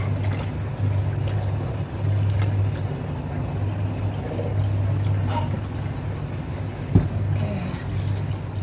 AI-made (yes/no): no